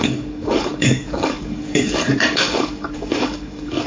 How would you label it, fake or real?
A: fake